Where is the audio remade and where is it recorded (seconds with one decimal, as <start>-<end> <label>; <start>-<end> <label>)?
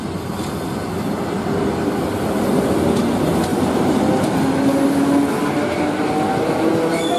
0.0-3.5 recorded; 3.5-4.0 remade; 4.0-7.2 recorded